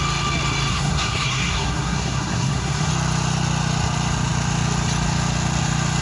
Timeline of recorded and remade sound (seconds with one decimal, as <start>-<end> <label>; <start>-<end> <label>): 0.0-0.7 recorded; 0.7-2.9 remade; 2.9-6.0 recorded